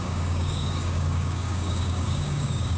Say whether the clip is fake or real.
fake